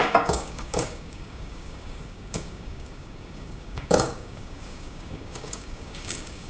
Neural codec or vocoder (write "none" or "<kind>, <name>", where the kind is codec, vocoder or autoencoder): codec, DAC